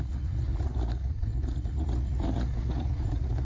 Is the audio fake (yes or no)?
yes